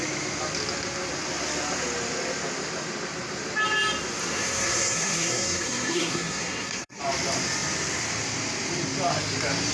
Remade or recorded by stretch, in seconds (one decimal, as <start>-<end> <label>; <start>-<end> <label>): 0.0-4.2 recorded; 4.2-7.0 remade; 7.0-9.7 recorded

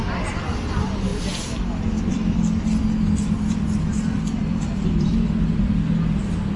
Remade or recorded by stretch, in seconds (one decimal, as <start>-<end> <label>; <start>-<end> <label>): 0.0-6.6 recorded

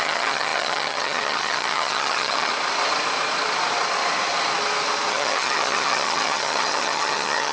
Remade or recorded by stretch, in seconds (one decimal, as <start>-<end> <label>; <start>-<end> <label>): 0.0-2.5 remade; 2.5-5.1 recorded; 5.1-7.5 remade

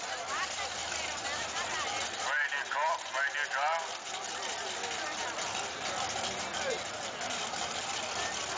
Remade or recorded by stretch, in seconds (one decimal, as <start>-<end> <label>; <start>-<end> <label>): 0.0-8.6 recorded

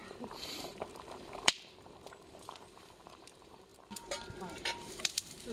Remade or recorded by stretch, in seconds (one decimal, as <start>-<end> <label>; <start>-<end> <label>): 0.0-5.5 remade

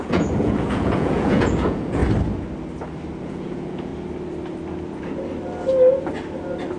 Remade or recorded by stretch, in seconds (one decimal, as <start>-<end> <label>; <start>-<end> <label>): 0.0-2.0 remade; 2.0-3.2 recorded; 3.2-3.9 remade; 3.9-6.8 recorded